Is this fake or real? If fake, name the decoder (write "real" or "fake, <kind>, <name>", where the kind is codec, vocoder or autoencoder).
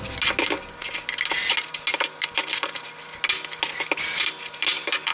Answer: real